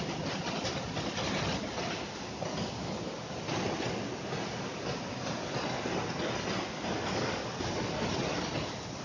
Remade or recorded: recorded